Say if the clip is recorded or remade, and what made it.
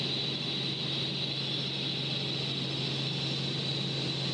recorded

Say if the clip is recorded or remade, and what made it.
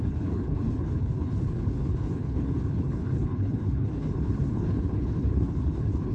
remade, codec, HILCodec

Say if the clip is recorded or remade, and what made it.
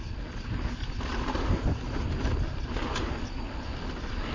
recorded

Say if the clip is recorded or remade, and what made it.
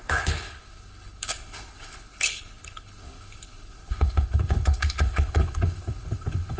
remade, codec, HILCodec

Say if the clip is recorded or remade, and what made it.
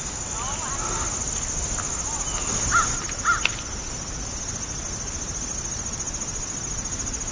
recorded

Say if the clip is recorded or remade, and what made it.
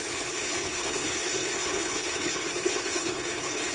remade, codec, HILCodec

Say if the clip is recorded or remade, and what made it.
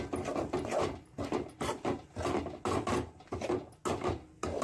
recorded